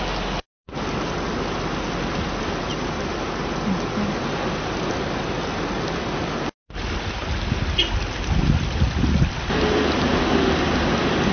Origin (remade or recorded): recorded